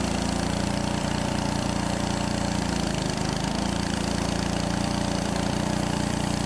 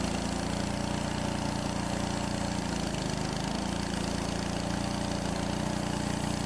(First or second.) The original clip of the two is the second